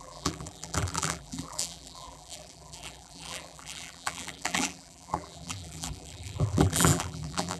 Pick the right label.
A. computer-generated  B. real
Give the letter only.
A